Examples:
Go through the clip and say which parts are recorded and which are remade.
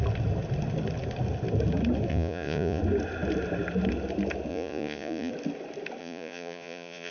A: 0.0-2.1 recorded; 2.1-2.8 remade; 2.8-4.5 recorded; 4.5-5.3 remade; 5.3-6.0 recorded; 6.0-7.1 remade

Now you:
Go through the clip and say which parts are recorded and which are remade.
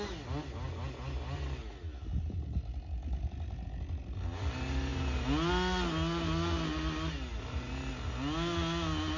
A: 0.0-9.2 recorded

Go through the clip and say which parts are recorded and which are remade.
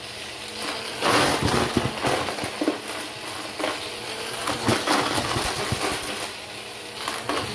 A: 0.0-7.5 recorded